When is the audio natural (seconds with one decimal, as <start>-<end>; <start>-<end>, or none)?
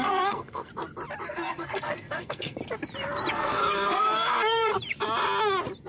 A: 0.7-1.3; 2.6-3.3; 4.7-5.9